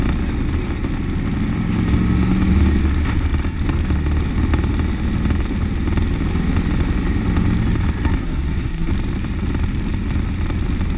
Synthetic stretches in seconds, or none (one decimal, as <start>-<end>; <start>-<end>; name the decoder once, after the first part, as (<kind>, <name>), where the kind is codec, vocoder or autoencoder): 8.2-8.9 (codec, SNAC)